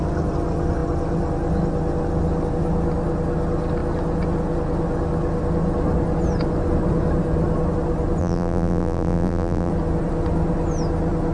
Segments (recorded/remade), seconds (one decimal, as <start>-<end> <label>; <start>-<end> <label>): 0.0-8.2 recorded; 8.2-9.7 remade; 9.7-11.3 recorded